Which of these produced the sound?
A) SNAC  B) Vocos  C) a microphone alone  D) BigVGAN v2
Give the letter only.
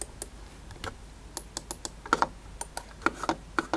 C